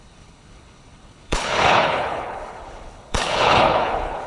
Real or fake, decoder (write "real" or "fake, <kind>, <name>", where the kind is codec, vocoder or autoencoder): fake, codec, HILCodec